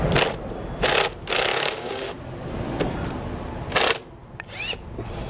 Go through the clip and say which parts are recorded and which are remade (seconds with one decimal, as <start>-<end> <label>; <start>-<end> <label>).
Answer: 0.0-1.5 recorded; 1.5-2.1 remade; 2.1-5.3 recorded